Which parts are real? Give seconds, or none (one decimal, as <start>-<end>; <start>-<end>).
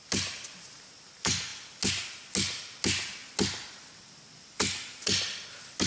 0.0-5.9